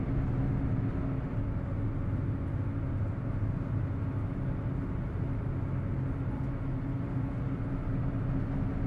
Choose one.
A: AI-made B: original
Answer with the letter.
B